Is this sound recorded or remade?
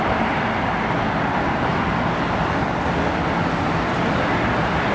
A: recorded